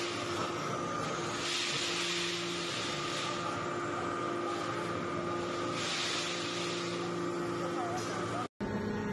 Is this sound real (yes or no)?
yes